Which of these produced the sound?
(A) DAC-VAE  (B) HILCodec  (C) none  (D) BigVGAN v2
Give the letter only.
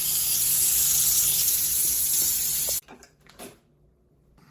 D